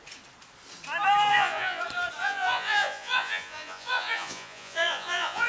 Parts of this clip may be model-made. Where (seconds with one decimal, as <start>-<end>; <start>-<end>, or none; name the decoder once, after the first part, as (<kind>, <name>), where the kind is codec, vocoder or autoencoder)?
1.3-1.8 (vocoder, Vocos); 2.2-5.5